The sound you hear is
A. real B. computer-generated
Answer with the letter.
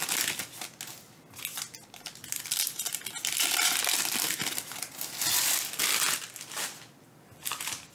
A